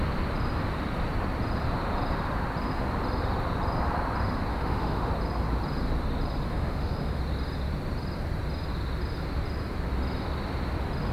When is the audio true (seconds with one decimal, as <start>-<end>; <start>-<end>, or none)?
0.0-4.5; 5.1-6.5; 7.2-11.1